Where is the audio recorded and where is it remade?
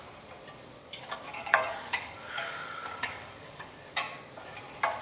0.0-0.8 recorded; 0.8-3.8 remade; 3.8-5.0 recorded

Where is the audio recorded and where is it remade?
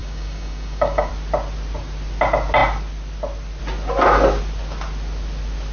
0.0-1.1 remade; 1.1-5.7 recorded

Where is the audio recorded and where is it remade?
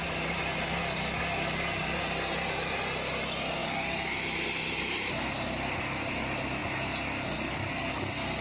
0.0-8.4 recorded